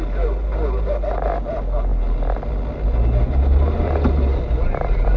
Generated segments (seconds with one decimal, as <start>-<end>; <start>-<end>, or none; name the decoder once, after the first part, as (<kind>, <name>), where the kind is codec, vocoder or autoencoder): none